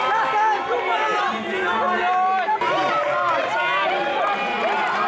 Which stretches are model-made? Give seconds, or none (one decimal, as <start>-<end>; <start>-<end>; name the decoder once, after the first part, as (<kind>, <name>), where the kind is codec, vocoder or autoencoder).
2.8-3.3 (vocoder, BigVGAN v2)